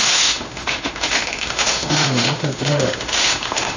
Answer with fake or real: fake